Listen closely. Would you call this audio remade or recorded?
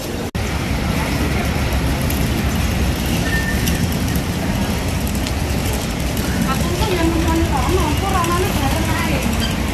recorded